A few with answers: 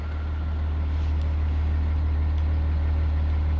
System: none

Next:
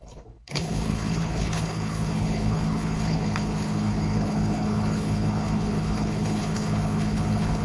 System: codec, HILCodec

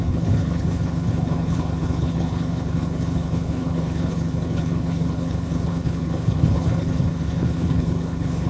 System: codec, HILCodec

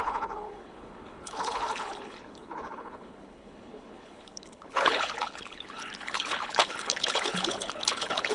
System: codec, HILCodec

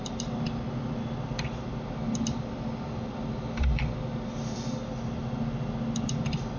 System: none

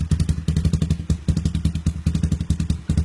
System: none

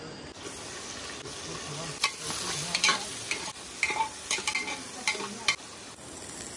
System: none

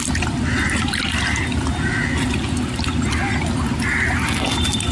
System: none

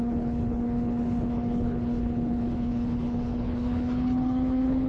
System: codec, HILCodec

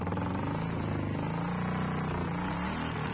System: none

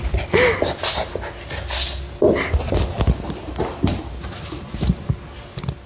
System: none